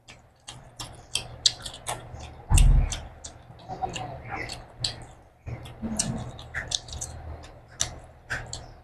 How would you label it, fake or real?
real